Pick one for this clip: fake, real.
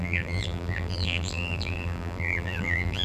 fake